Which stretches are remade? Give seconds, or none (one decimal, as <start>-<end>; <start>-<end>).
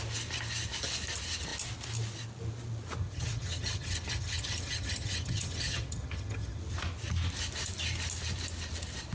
3.0-6.6